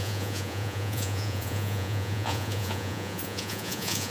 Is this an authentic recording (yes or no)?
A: no